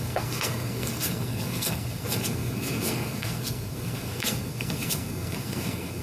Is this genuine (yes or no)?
no